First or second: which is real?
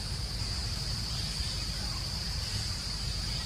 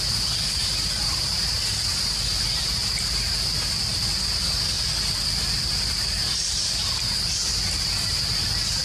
second